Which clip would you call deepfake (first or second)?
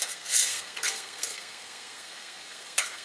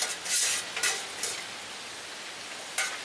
first